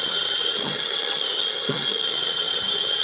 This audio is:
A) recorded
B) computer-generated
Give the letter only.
B